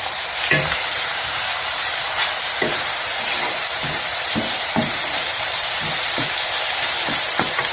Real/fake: fake